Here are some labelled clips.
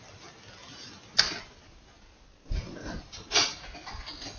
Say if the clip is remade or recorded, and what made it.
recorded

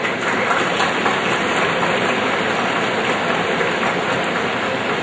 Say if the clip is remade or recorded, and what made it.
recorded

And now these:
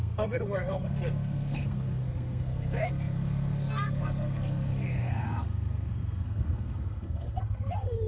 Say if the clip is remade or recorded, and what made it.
remade, codec, SNAC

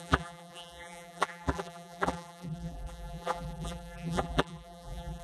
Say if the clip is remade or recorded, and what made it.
remade, vocoder, BigVGAN v2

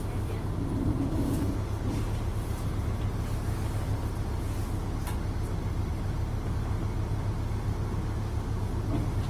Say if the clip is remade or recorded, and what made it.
recorded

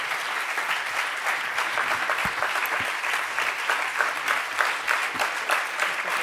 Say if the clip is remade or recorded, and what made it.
recorded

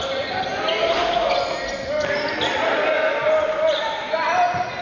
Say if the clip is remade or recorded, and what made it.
recorded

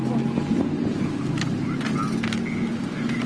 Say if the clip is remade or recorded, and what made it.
recorded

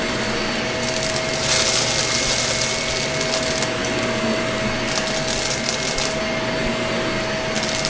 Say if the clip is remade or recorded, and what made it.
recorded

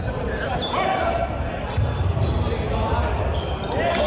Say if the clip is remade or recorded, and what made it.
recorded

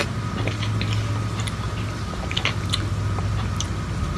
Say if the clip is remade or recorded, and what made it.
recorded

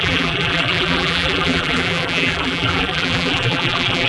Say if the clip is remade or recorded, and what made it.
remade, vocoder, BigVGAN v2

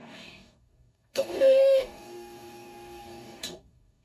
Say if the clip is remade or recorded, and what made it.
remade, codec, DAC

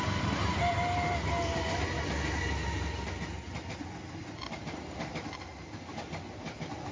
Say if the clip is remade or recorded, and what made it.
recorded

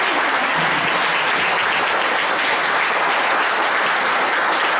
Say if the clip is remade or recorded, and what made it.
recorded